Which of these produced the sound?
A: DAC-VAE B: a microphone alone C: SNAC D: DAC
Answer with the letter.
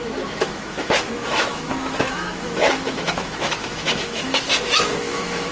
A